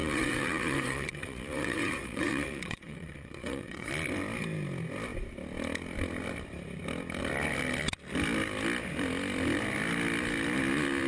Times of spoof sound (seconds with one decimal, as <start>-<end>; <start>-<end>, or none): 0.0-3.9